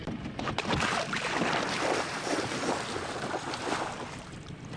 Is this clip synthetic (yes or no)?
no